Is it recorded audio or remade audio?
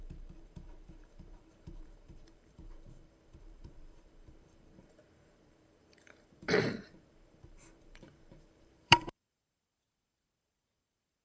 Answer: remade